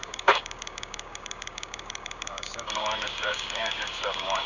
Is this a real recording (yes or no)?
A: no